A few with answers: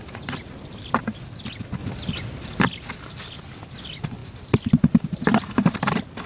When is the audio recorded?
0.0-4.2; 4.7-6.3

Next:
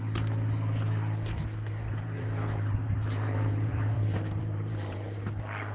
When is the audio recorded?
0.0-1.8; 5.2-5.7

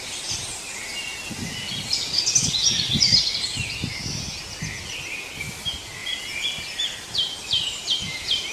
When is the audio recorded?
0.0-6.0

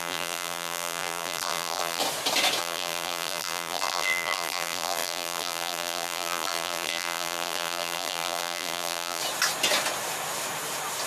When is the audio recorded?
2.0-2.6; 9.2-11.1